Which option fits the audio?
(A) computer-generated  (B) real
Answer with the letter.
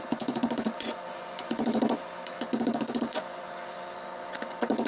A